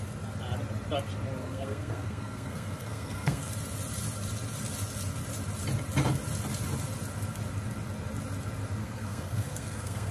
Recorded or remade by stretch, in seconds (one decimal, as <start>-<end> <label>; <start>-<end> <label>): 0.0-1.4 recorded; 1.4-3.5 remade; 3.5-8.8 recorded; 8.8-10.1 remade